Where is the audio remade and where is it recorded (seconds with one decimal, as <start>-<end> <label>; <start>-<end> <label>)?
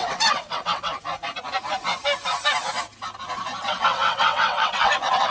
0.0-0.9 remade; 0.9-3.6 recorded; 3.6-5.3 remade